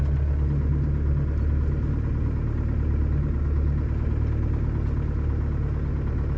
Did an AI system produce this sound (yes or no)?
no